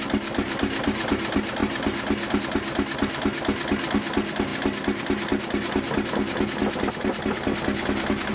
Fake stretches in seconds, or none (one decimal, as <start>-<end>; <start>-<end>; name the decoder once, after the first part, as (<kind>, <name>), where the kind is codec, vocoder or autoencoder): none